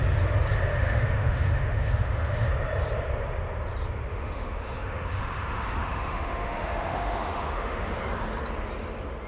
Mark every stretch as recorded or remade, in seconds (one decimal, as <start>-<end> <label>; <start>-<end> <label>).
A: 0.0-0.7 recorded; 0.7-2.5 remade; 2.5-4.1 recorded; 4.1-7.9 remade; 7.9-9.3 recorded